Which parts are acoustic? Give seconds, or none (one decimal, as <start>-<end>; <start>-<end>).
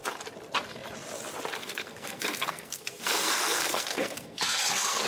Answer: 0.0-1.6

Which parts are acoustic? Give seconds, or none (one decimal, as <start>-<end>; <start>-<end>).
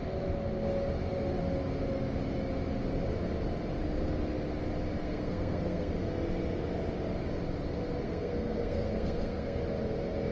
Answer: 0.0-5.0; 5.9-8.0; 9.6-10.3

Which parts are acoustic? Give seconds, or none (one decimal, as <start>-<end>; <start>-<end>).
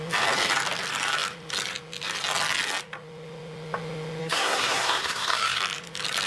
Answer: 0.0-4.2; 5.6-6.3